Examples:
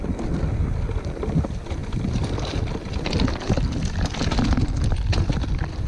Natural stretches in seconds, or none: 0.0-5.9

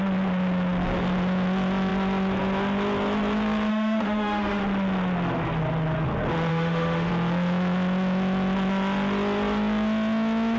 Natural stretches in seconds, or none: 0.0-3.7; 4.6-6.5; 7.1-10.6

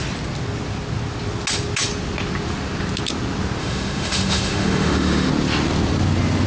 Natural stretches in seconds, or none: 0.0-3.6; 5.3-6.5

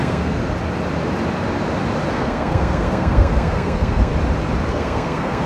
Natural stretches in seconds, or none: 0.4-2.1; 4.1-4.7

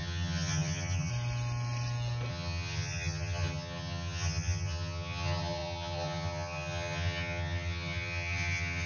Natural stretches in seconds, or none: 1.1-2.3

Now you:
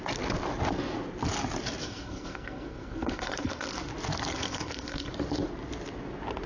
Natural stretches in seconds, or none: 0.0-1.8; 3.9-4.3; 5.1-6.5

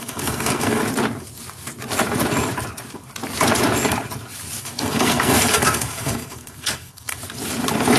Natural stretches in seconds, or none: 0.8-4.6; 7.2-8.0

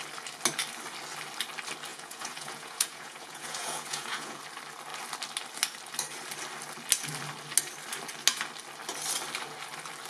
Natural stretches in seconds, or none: 0.0-1.9; 4.4-10.1